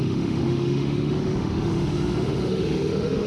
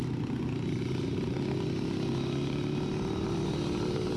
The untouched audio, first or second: second